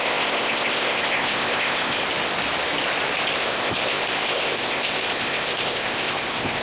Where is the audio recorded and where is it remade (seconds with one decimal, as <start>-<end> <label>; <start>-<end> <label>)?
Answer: 0.0-2.0 remade; 2.0-3.4 recorded; 3.4-6.6 remade